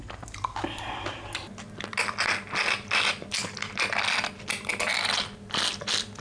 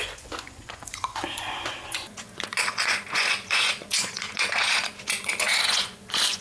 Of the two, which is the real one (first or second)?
first